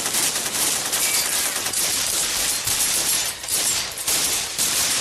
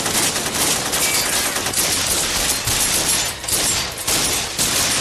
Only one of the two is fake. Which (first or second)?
first